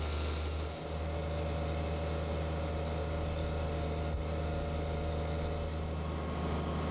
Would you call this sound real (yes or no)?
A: yes